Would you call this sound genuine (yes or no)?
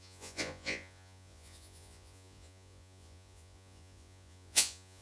no